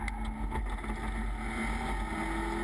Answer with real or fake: real